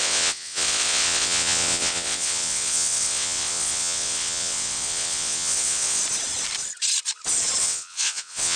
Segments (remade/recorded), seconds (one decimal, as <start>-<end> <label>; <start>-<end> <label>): 0.0-6.0 remade; 6.0-7.6 recorded; 7.6-8.6 remade